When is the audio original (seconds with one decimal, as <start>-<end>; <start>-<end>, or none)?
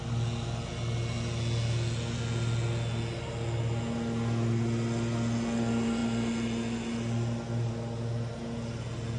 0.0-9.2